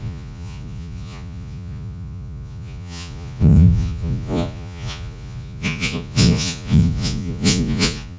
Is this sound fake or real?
fake